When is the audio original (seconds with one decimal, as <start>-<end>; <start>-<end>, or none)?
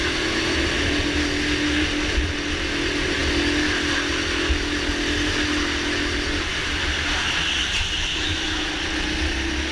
0.0-8.1; 8.7-9.7